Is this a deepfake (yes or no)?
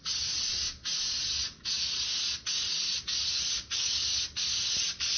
no